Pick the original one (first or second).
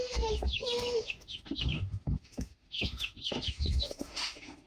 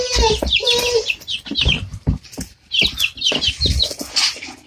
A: second